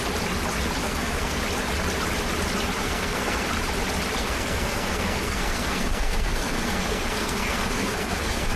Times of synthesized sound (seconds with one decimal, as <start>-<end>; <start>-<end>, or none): 0.8-1.4; 2.8-3.5; 4.2-8.6